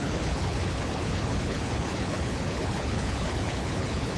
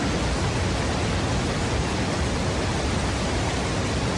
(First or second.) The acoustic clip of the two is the second